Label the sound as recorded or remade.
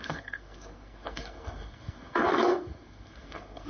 remade